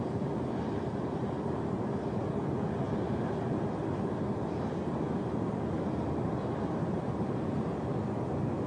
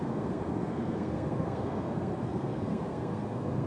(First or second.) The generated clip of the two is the second